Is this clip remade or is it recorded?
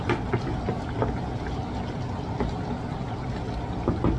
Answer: recorded